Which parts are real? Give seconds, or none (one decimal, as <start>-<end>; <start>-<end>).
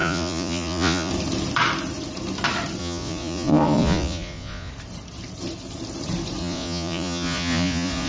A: 1.1-2.8; 4.7-6.4